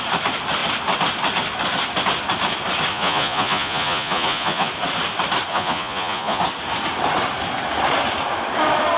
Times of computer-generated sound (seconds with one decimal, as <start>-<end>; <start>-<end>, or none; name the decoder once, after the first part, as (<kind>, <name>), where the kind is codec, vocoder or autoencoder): 2.9-4.7 (vocoder, Vocos); 5.5-6.4